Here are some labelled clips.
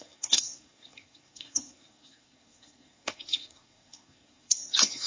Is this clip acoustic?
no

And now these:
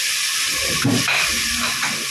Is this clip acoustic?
yes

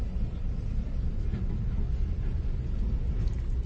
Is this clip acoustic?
yes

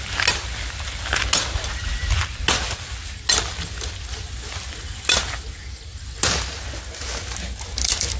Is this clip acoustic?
yes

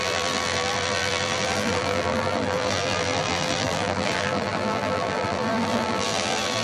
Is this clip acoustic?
no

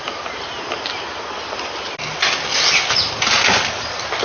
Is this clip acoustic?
yes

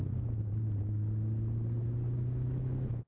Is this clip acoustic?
yes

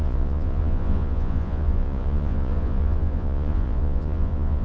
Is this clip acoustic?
no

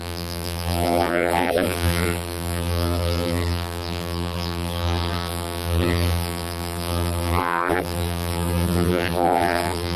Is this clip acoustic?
no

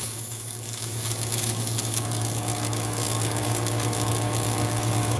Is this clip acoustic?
no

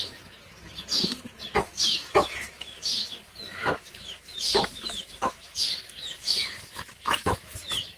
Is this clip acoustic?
no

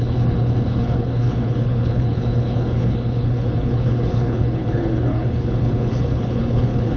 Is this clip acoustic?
no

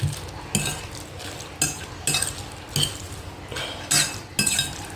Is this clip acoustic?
yes